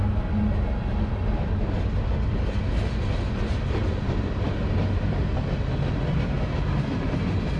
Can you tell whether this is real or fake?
real